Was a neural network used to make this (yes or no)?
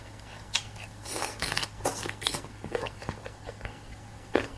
yes